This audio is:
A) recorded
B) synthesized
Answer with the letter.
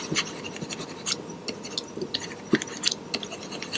A